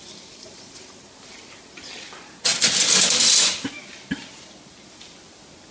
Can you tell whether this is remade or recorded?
recorded